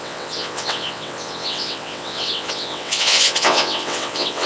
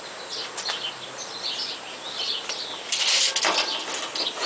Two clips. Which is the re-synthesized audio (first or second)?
first